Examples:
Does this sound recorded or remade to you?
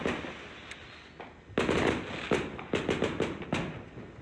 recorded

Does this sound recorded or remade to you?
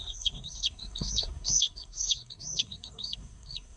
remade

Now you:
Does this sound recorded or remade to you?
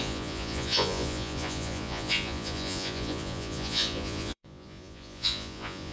remade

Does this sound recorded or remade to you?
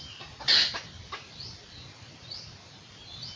recorded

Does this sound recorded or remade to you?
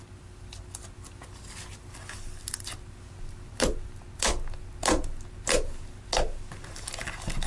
recorded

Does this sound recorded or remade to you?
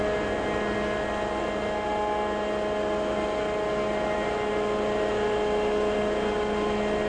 recorded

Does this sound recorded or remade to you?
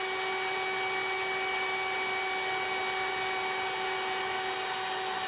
recorded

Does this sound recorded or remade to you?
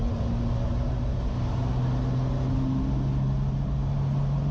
recorded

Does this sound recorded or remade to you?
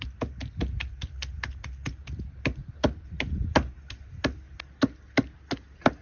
recorded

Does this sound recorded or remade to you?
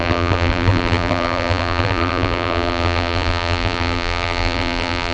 remade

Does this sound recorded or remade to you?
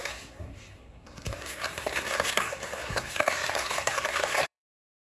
remade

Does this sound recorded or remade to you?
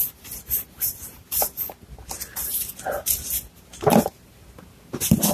recorded